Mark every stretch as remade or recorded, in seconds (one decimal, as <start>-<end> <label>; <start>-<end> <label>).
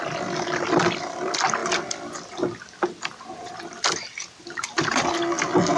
0.0-5.8 recorded